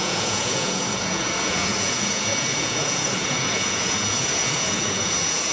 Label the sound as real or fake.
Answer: fake